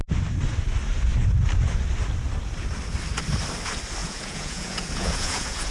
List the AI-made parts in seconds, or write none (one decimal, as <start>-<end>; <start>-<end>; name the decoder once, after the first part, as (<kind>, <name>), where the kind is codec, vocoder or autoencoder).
4.0-5.7 (vocoder, Vocos)